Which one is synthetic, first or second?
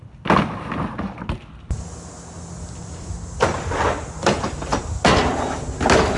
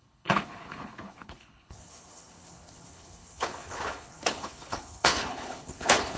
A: second